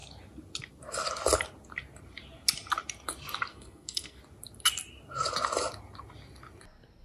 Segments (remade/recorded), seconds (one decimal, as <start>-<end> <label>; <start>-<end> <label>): 0.0-3.5 recorded; 3.5-4.2 remade; 4.2-7.0 recorded